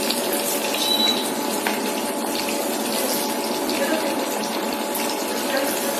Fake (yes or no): no